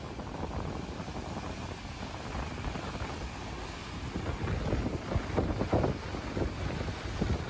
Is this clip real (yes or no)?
yes